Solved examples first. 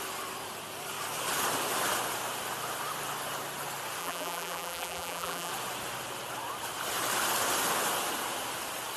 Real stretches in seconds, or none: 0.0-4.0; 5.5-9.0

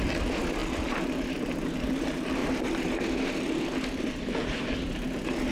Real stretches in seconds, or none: 0.0-0.6; 1.7-2.4; 4.6-5.5

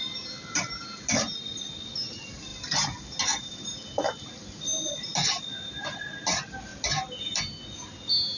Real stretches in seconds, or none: 0.0-8.4